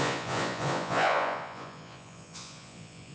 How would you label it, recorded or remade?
remade